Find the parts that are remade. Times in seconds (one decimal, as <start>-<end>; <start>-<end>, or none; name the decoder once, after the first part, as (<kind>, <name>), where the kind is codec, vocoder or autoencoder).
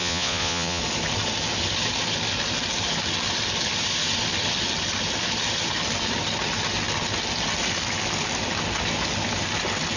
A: 0.0-0.8 (vocoder, Vocos)